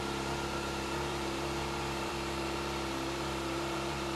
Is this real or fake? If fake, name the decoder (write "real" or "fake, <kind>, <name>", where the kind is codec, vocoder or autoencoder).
fake, vocoder, BigVGAN v2